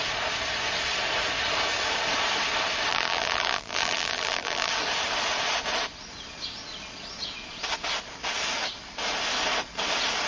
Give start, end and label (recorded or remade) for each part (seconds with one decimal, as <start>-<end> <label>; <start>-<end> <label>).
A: 0.0-2.9 recorded; 2.9-4.7 remade; 4.7-10.3 recorded